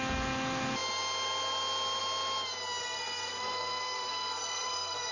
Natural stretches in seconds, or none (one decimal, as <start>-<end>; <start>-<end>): 0.0-2.8